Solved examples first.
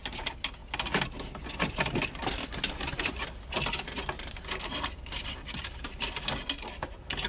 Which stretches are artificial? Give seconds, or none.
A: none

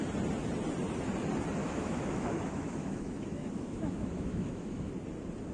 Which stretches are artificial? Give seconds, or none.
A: 1.6-4.9 (autoencoder, DAC-VAE)

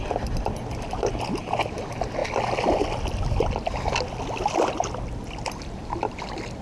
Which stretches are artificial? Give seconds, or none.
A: none